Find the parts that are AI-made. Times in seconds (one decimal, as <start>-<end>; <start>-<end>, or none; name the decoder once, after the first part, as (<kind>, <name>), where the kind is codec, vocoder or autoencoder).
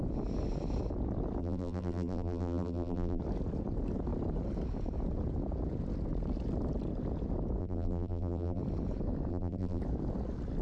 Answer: 1.4-3.2 (vocoder, BigVGAN v2); 7.6-8.6; 9.3-9.8